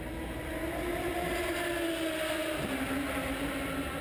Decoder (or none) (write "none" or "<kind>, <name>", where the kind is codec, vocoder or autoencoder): none